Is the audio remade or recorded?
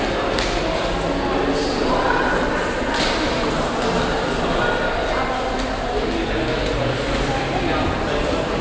recorded